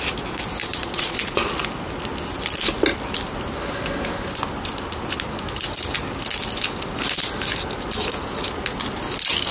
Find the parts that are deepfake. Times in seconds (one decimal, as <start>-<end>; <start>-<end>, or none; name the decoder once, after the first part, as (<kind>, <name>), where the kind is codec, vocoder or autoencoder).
0.6-1.5 (vocoder, Vocos)